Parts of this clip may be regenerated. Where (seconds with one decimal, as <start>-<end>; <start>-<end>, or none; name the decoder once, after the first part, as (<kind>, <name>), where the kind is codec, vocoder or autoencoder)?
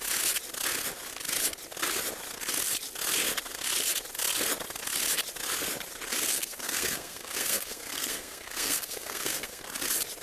6.3-9.6 (codec, SNAC)